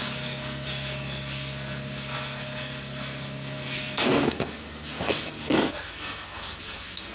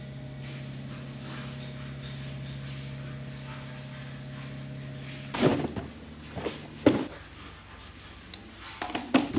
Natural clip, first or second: second